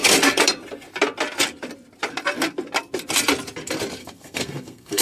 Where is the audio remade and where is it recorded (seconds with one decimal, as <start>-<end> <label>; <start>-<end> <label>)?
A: 0.0-4.0 recorded; 4.0-5.0 remade